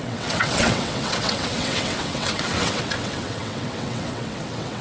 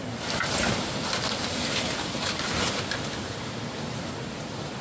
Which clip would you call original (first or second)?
second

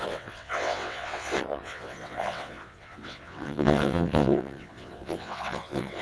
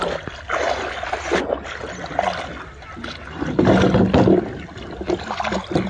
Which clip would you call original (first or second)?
second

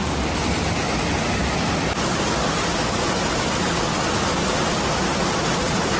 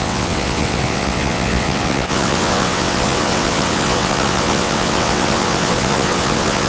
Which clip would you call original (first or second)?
first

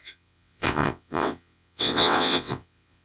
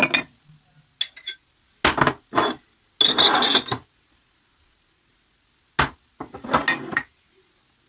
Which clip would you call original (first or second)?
second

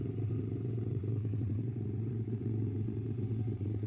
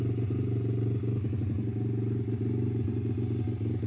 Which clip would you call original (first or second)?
second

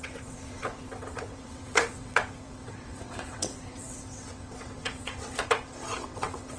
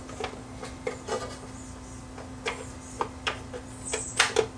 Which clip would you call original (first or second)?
second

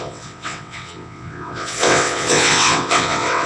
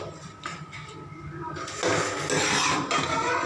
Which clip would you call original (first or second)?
second